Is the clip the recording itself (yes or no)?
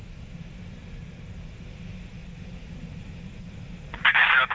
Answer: yes